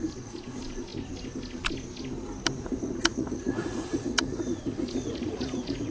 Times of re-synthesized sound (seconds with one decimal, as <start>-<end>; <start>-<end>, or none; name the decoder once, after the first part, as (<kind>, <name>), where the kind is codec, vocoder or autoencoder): 0.0-0.9 (vocoder, Vocos); 2.6-5.9